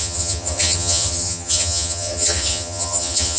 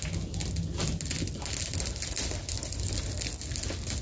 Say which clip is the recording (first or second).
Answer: second